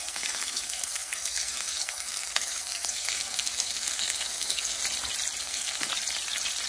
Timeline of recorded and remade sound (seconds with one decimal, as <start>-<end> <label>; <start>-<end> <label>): 0.0-4.8 remade; 4.8-5.4 recorded; 5.4-5.9 remade; 5.9-6.7 recorded